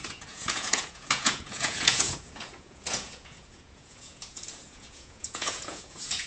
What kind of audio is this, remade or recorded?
remade